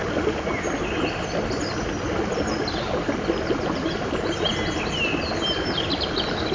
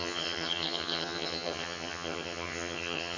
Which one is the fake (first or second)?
second